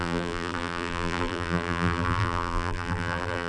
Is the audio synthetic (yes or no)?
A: yes